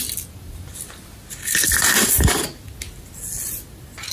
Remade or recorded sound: recorded